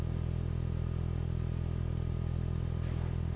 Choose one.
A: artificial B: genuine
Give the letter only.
B